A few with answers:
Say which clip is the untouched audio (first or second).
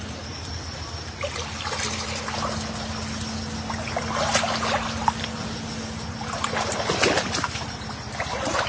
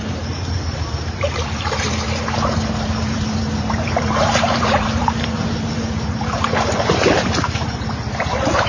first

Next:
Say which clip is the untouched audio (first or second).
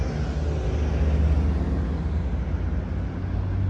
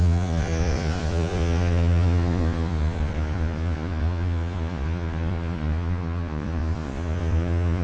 first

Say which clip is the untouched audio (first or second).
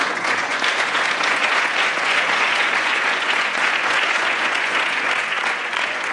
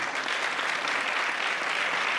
second